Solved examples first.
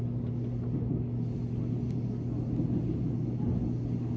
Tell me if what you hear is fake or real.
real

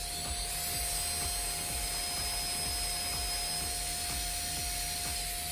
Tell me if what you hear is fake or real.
real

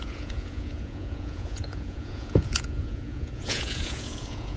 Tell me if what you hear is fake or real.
fake